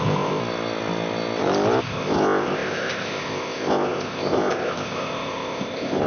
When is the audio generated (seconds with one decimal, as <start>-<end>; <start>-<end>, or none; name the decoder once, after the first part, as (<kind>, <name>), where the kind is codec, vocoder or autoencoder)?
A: 0.0-0.4 (codec, ZipCodec); 1.8-6.1